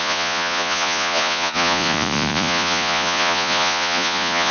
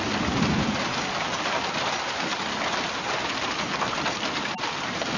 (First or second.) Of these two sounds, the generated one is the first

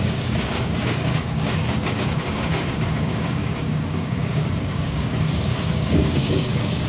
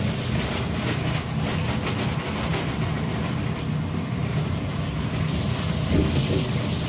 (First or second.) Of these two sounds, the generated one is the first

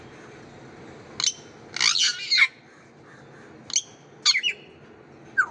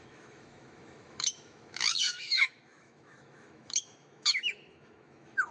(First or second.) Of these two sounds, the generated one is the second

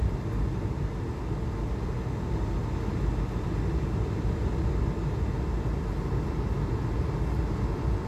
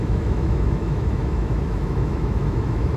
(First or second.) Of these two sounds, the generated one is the second